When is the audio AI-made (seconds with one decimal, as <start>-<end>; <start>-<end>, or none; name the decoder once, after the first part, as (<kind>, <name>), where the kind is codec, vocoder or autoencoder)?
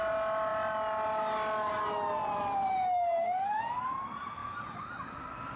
2.7-3.6 (codec, SNAC)